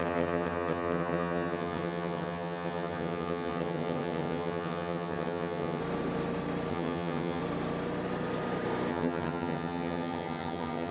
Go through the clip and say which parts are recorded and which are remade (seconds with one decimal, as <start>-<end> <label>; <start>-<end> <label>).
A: 0.0-5.8 remade; 5.8-6.7 recorded; 6.7-7.4 remade; 7.4-8.9 recorded; 8.9-10.9 remade

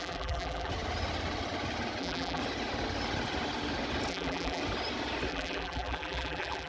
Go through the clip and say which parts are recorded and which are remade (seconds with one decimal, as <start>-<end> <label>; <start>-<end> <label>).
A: 0.0-0.7 remade; 0.7-2.0 recorded; 2.0-2.4 remade; 2.4-4.1 recorded; 4.1-4.6 remade; 4.6-5.3 recorded; 5.3-6.7 remade

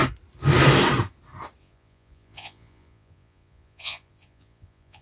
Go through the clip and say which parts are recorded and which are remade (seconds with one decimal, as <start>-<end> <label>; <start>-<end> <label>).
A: 0.0-1.6 recorded; 1.6-5.0 remade

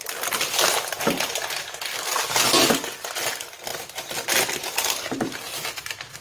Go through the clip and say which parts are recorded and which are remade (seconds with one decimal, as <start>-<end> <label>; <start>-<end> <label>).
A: 0.0-6.2 recorded

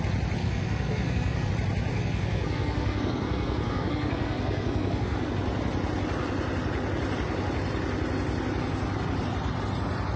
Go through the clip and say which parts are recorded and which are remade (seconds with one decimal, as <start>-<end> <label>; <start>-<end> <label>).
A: 0.0-0.4 recorded; 0.4-1.5 remade; 1.5-1.9 recorded; 1.9-5.3 remade; 5.3-10.2 recorded

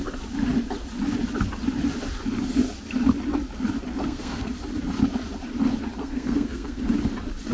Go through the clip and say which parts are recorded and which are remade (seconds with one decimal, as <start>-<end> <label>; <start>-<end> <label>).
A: 0.0-4.0 recorded; 4.0-4.5 remade; 4.5-6.0 recorded; 6.0-6.8 remade; 6.8-7.5 recorded

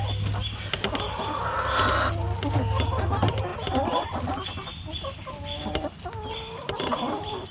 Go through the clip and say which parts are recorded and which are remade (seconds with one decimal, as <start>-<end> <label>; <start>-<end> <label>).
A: 0.0-7.5 recorded